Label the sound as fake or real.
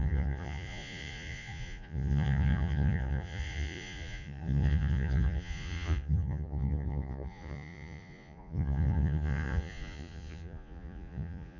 fake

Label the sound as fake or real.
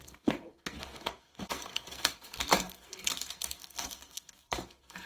fake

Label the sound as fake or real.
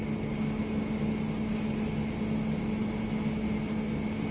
real